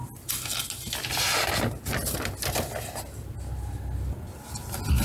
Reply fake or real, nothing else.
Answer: real